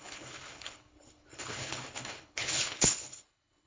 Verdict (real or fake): fake